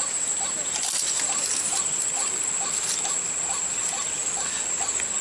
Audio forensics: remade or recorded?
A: recorded